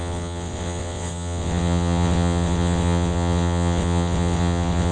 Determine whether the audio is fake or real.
fake